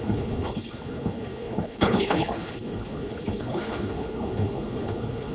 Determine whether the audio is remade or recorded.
remade